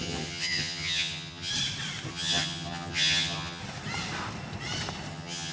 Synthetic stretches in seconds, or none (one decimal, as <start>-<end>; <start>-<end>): 0.0-1.5; 2.1-3.6; 5.1-5.5